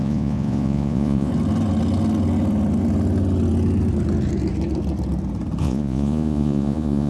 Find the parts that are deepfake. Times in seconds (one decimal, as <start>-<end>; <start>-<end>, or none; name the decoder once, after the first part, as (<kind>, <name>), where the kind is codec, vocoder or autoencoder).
0.0-1.3 (vocoder, Vocos); 5.6-7.1